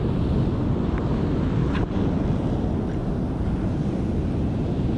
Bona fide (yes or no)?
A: yes